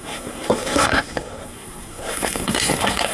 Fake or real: fake